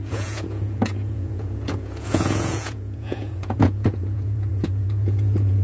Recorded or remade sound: remade